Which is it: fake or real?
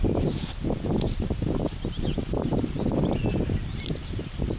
real